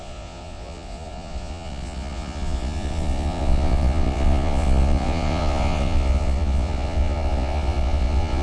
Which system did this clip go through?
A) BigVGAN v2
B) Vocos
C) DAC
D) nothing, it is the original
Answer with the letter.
B